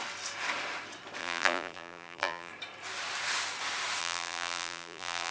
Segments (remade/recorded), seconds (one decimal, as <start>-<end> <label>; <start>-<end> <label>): 0.0-1.2 recorded; 1.2-2.5 remade; 2.5-4.0 recorded; 4.0-5.3 remade